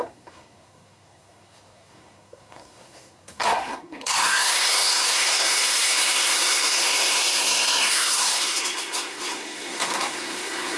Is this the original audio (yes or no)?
no